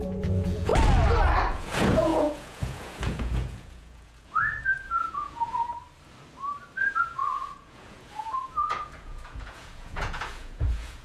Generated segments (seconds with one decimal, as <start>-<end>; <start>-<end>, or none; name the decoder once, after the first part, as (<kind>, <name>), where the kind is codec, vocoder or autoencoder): 0.0-0.7 (vocoder, Vocos); 1.5-5.7; 6.8-11.0